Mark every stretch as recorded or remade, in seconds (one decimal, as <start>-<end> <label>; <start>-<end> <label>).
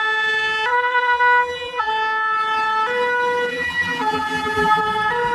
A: 0.0-0.7 recorded; 0.7-1.9 remade; 1.9-3.5 recorded; 3.5-4.8 remade; 4.8-5.3 recorded